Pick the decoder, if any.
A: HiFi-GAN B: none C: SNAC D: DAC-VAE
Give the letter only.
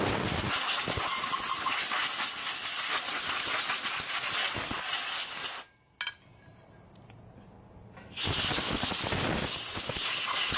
B